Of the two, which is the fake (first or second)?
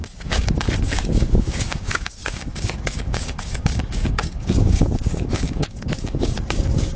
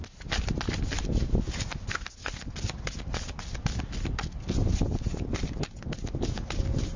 first